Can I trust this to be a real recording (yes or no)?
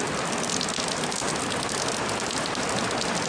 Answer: yes